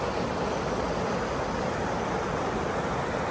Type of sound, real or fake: real